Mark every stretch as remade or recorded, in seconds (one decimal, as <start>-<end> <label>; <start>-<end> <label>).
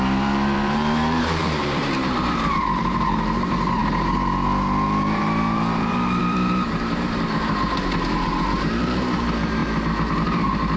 0.0-10.8 remade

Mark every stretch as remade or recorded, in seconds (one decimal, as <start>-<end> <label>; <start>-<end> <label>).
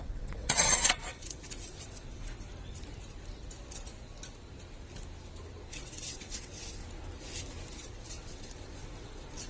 0.0-2.5 remade; 2.5-5.7 recorded; 5.7-6.8 remade; 6.8-7.7 recorded; 7.7-9.5 remade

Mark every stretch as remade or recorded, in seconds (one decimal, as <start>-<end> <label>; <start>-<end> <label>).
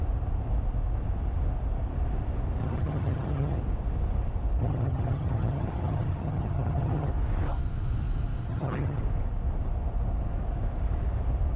0.0-2.6 recorded; 2.6-3.6 remade; 3.6-4.6 recorded; 4.6-7.1 remade; 7.1-8.5 recorded; 8.5-9.0 remade; 9.0-11.6 recorded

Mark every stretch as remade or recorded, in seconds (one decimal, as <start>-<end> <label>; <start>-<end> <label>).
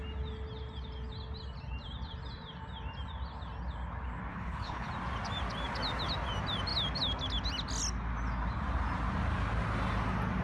0.0-4.3 recorded; 4.3-4.9 remade; 4.9-10.4 recorded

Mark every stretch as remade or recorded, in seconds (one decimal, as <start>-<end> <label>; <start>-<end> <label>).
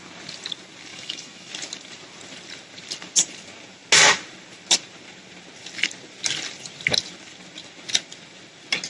0.0-0.9 recorded; 0.9-1.5 remade; 1.5-8.9 recorded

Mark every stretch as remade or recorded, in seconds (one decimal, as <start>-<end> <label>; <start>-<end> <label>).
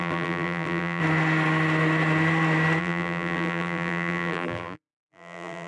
0.0-1.0 remade; 1.0-2.8 recorded; 2.8-5.7 remade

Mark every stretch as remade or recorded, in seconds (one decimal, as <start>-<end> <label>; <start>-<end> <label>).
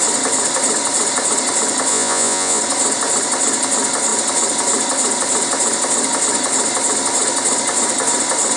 0.0-1.9 recorded; 1.9-2.6 remade; 2.6-8.6 recorded